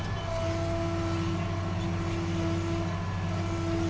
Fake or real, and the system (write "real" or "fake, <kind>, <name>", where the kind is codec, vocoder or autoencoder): real